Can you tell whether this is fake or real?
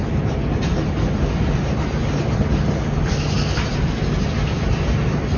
real